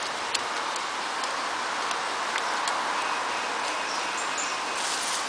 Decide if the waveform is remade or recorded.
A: recorded